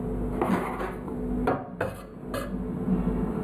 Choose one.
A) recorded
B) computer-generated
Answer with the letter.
A